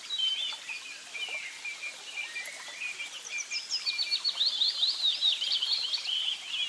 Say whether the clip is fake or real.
real